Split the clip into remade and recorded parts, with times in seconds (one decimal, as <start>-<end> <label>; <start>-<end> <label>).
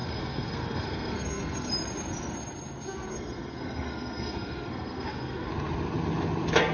0.0-1.7 remade; 1.7-3.1 recorded; 3.1-5.5 remade; 5.5-6.7 recorded